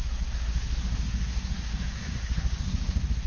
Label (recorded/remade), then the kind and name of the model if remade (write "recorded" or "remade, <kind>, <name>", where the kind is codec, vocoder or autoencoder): remade, codec, SNAC